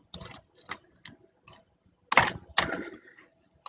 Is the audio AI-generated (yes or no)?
no